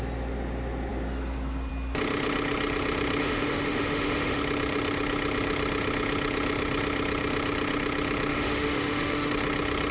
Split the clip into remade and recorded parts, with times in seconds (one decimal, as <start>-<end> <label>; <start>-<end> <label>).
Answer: 0.0-3.2 recorded; 3.2-4.4 remade; 4.4-8.3 recorded; 8.3-9.3 remade; 9.3-9.9 recorded